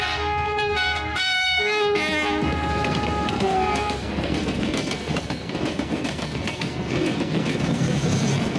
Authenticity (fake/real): fake